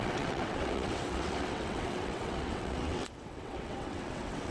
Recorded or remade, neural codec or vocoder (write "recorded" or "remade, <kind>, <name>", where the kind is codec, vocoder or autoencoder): remade, vocoder, WaveNeXt